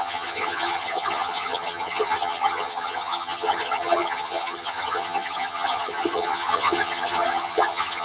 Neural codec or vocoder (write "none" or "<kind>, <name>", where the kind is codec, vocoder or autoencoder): vocoder, HiFi-GAN